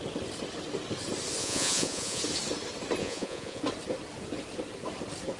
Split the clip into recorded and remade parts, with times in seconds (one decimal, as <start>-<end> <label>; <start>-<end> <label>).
0.0-1.4 recorded; 1.4-2.2 remade; 2.2-3.0 recorded; 3.0-3.6 remade; 3.6-5.4 recorded